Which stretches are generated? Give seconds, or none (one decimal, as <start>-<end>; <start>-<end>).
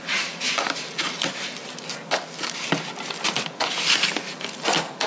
none